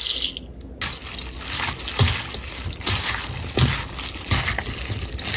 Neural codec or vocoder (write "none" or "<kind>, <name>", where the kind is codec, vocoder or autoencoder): none